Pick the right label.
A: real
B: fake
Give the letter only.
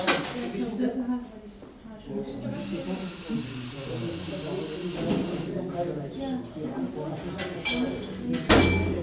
A